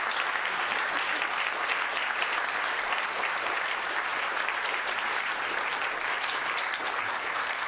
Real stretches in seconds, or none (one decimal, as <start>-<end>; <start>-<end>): 0.0-7.7